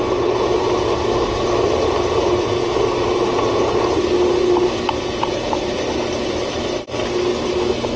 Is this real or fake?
real